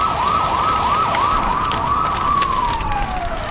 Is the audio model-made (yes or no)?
no